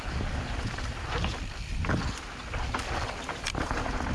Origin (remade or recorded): remade